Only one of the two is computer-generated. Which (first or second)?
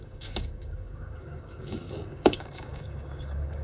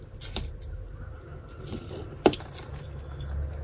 first